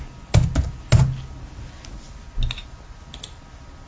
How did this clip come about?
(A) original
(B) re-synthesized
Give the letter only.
A